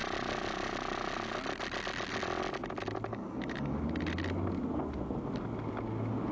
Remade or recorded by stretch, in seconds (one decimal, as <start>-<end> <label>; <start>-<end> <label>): 0.0-3.1 recorded; 3.1-3.8 remade; 3.8-6.3 recorded